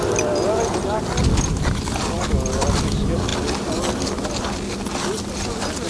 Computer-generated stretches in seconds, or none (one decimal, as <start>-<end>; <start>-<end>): none